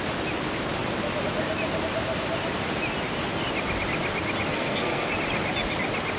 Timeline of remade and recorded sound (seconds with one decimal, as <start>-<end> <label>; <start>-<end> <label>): 0.0-4.5 recorded; 4.5-5.1 remade; 5.1-6.2 recorded